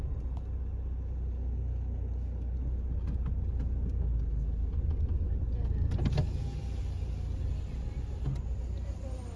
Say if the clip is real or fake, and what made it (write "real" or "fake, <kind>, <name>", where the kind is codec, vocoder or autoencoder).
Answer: real